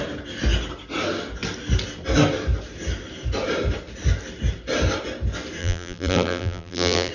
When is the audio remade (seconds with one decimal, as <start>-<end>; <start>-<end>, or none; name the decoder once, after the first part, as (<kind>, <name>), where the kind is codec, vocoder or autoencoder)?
5.6-7.1 (vocoder, BigVGAN v2)